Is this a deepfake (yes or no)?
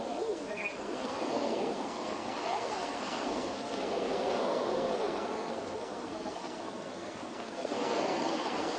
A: yes